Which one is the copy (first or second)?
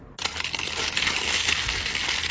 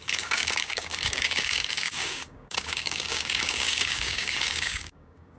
second